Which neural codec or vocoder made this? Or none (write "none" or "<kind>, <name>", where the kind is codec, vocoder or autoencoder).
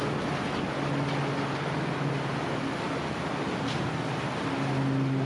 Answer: none